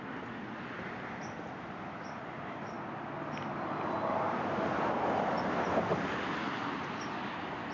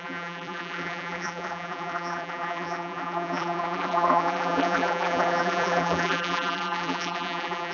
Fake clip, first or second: second